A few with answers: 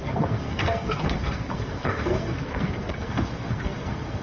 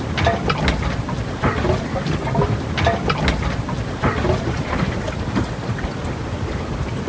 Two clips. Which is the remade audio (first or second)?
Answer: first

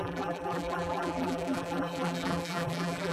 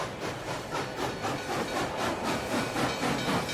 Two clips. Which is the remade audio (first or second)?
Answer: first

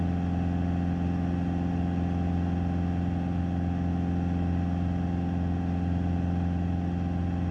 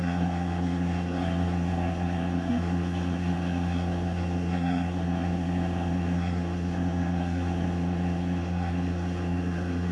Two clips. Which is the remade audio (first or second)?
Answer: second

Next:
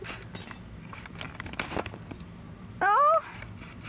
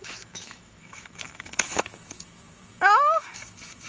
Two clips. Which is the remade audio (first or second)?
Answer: second